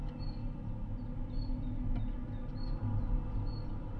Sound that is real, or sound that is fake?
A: real